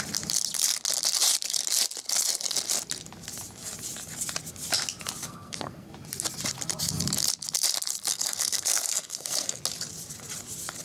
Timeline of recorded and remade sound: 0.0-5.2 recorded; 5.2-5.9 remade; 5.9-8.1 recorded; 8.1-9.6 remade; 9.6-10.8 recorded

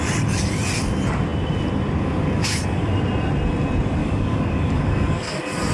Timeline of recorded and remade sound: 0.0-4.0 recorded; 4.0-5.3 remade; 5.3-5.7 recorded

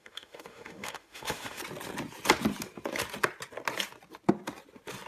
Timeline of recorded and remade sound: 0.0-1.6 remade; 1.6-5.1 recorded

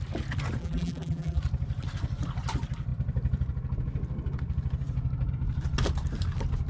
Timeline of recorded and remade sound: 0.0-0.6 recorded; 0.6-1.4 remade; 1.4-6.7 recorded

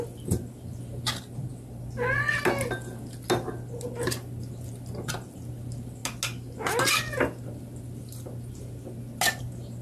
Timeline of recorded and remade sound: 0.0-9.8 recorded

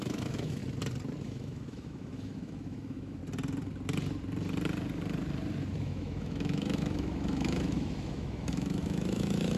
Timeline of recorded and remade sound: 0.0-0.6 remade; 0.6-1.2 recorded; 1.2-3.2 remade; 3.2-5.8 recorded; 5.8-9.6 remade

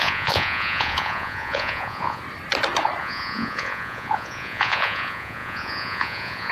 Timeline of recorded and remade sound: 0.0-2.2 remade; 2.2-3.0 recorded; 3.0-6.5 remade

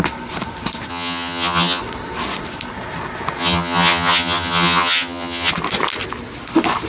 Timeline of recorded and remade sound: 0.0-0.9 recorded; 0.9-1.8 remade; 1.8-3.4 recorded; 3.4-5.5 remade; 5.5-6.9 recorded